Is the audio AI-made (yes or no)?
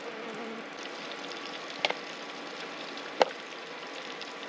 no